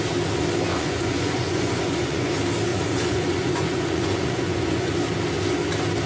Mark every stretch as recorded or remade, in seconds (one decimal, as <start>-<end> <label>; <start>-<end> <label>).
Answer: 0.0-0.7 recorded; 0.7-2.3 remade; 2.3-2.7 recorded; 2.7-4.9 remade; 4.9-6.1 recorded